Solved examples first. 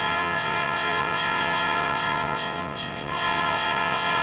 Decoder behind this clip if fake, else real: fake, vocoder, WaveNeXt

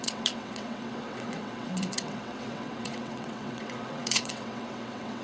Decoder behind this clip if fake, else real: fake, vocoder, WaveNeXt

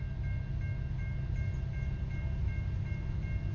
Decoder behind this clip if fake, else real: real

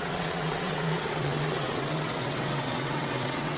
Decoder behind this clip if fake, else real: fake, vocoder, WaveNeXt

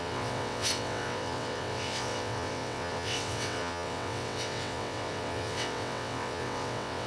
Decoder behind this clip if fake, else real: fake, vocoder, WaveNeXt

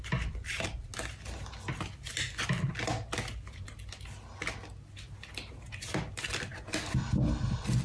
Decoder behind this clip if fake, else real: real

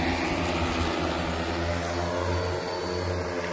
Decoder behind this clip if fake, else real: real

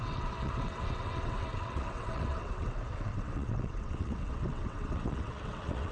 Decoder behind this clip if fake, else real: fake, vocoder, WaveNeXt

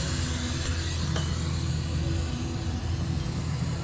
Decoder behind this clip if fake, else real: real